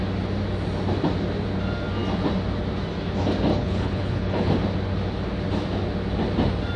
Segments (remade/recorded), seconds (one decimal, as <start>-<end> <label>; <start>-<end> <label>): 0.0-3.5 recorded; 3.5-4.5 remade; 4.5-6.8 recorded